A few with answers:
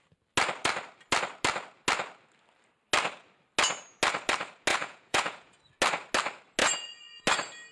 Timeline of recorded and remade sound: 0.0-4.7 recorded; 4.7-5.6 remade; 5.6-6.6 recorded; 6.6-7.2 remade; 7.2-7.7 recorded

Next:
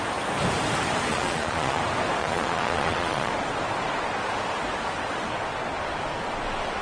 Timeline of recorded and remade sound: 0.0-1.1 recorded; 1.1-1.8 remade; 1.8-2.2 recorded; 2.2-3.3 remade; 3.3-6.8 recorded

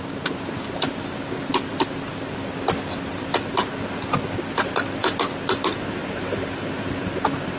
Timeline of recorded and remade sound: 0.0-7.6 recorded

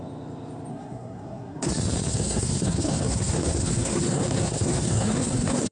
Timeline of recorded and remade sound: 0.0-0.7 recorded; 0.7-1.7 remade; 1.7-2.1 recorded; 2.1-5.7 remade

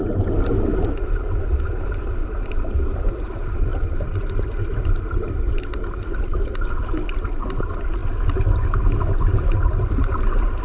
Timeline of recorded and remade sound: 0.0-10.6 recorded